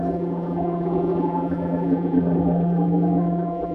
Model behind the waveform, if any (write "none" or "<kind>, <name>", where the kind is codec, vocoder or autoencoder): vocoder, BigVGAN v2